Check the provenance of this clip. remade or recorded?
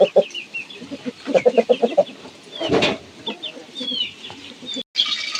recorded